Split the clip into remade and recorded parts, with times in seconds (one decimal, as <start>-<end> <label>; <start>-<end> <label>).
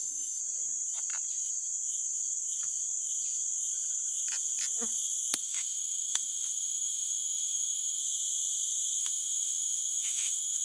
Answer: 0.0-0.4 remade; 0.4-5.4 recorded; 5.4-8.0 remade; 8.0-9.0 recorded; 9.0-10.6 remade